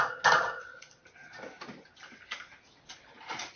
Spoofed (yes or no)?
no